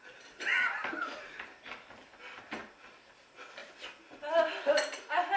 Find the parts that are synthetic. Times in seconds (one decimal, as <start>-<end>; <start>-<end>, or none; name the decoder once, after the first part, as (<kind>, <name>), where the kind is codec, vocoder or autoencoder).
none